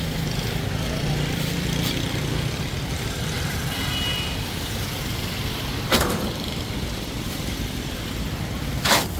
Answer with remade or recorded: remade